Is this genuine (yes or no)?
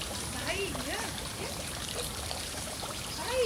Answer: no